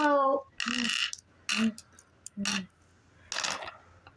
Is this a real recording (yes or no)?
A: yes